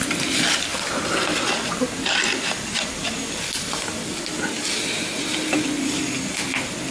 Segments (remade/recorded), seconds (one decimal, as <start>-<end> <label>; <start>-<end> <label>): 0.0-6.9 recorded

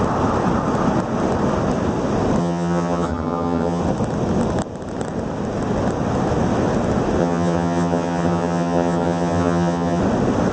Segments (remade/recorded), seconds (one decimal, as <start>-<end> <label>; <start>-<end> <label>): 0.0-2.4 recorded; 2.4-3.8 remade; 3.8-7.2 recorded; 7.2-10.0 remade; 10.0-10.5 recorded

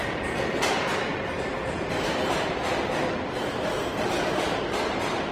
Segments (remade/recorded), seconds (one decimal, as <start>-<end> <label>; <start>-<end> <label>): 0.0-5.3 recorded

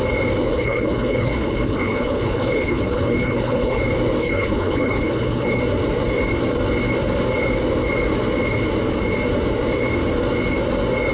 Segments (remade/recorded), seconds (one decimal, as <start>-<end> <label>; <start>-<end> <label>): 0.0-0.5 recorded; 0.5-3.8 remade; 3.8-4.2 recorded; 4.2-5.6 remade; 5.6-11.1 recorded

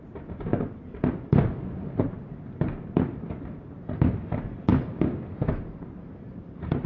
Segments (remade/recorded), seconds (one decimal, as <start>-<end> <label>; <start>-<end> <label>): 0.0-1.8 remade; 1.8-2.7 recorded; 2.7-4.7 remade; 4.7-6.3 recorded; 6.3-6.9 remade

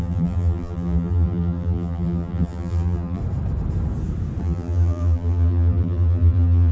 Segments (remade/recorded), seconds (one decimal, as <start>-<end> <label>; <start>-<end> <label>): 0.0-3.2 remade; 3.2-4.4 recorded; 4.4-6.7 remade

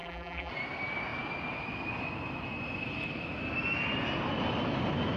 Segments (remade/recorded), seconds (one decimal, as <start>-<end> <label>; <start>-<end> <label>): 0.0-0.5 remade; 0.5-5.2 recorded

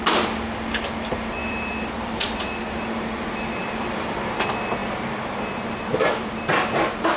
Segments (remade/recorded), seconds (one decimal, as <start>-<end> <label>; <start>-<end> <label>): 0.0-1.4 recorded; 1.4-4.2 remade; 4.2-7.2 recorded